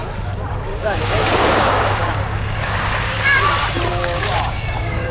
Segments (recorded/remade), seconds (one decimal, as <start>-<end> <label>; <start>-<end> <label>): 0.0-0.7 recorded; 0.7-3.4 remade; 3.4-3.9 recorded; 3.9-5.1 remade